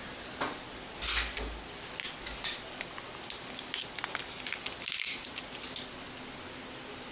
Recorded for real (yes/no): yes